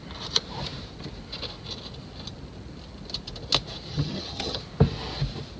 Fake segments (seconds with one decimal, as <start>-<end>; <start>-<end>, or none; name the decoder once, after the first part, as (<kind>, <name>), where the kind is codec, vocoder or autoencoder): 3.9-4.6 (vocoder, HiFi-GAN)